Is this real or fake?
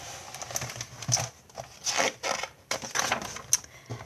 real